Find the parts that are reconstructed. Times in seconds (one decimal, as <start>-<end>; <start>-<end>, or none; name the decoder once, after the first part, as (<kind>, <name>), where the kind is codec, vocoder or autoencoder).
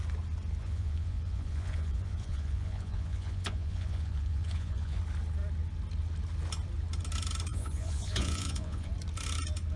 0.6-5.0 (vocoder, Vocos); 7.5-8.9